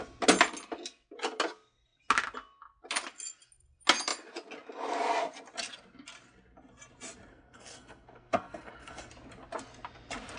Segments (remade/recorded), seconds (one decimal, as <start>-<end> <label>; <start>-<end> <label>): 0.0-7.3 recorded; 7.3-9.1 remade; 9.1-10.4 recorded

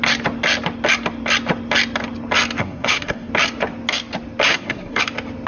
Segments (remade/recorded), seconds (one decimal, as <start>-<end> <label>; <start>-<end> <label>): 0.0-2.6 recorded; 2.6-3.3 remade; 3.3-4.5 recorded; 4.5-5.0 remade; 5.0-5.5 recorded

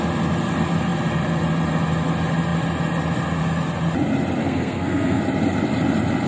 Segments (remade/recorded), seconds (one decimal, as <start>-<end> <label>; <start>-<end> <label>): 0.0-4.4 recorded; 4.4-5.2 remade; 5.2-6.3 recorded

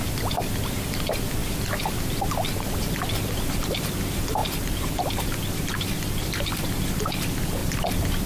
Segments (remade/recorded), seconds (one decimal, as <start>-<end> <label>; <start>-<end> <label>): 0.0-8.3 recorded